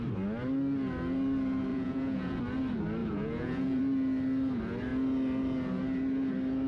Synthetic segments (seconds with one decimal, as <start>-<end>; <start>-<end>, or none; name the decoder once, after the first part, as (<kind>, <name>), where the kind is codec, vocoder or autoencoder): 1.7-2.4 (vocoder, Vocos); 3.0-3.8